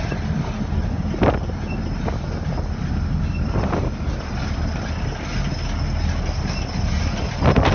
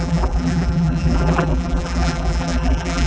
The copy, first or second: second